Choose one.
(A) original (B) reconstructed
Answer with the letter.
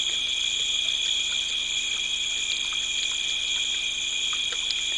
A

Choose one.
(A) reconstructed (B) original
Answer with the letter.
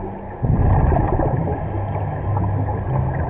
B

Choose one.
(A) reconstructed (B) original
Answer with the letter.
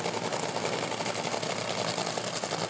B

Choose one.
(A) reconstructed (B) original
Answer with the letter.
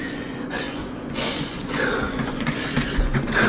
A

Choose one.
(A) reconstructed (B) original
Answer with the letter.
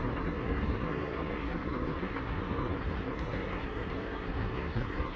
A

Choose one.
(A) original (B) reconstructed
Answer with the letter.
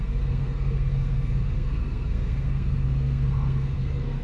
B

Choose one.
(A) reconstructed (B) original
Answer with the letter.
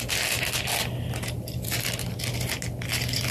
B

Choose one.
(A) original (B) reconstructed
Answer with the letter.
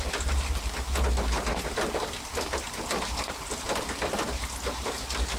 A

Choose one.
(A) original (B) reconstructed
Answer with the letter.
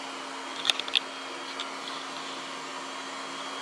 A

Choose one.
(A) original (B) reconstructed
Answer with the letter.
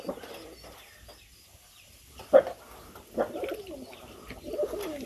A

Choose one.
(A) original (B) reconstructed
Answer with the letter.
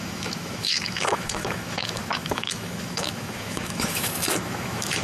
B